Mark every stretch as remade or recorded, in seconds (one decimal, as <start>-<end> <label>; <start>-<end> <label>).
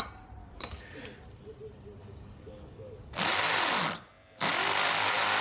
0.0-0.4 recorded; 0.4-1.0 remade; 1.0-2.0 recorded; 2.0-3.2 remade; 3.2-5.4 recorded